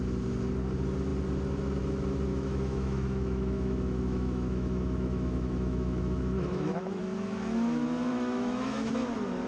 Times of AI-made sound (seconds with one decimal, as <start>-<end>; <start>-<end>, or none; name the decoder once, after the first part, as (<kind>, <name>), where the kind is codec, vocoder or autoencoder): 2.3-7.0 (autoencoder, DAC-VAE); 8.1-8.9